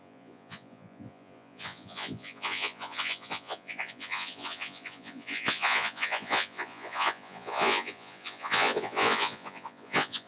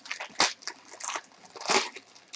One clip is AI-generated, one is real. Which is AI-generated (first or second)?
first